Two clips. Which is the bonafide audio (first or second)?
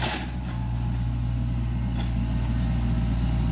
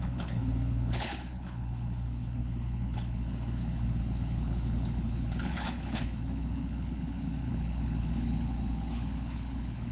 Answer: first